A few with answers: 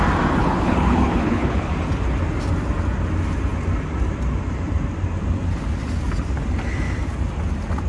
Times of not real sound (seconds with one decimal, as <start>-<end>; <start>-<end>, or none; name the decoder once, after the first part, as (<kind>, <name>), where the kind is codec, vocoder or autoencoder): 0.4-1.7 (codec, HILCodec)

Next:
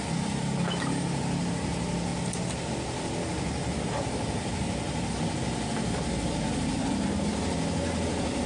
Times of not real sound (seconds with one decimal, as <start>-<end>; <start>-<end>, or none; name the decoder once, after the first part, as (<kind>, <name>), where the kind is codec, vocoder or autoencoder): none

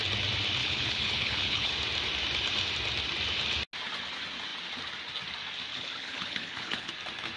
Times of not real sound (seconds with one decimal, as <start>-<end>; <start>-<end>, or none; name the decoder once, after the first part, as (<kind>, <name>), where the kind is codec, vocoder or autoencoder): 0.6-1.7 (codec, HILCodec); 5.7-6.9

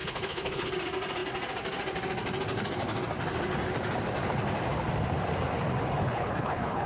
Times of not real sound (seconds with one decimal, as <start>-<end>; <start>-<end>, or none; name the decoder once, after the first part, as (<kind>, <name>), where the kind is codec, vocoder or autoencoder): 0.0-0.7 (codec, HILCodec); 6.0-6.9

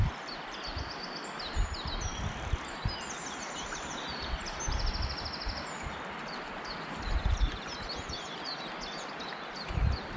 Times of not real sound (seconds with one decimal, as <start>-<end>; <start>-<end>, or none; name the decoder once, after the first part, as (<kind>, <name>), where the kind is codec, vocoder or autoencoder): none